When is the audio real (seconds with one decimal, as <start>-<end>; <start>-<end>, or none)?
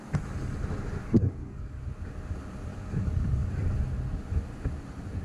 0.0-1.0; 1.8-2.7; 3.5-5.2